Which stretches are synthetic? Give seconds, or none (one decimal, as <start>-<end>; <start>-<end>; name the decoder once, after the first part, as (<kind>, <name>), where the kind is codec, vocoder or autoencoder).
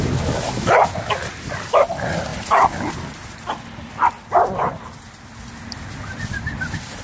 none